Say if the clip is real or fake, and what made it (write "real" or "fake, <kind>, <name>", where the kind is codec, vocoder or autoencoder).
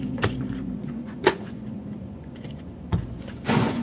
fake, vocoder, Vocos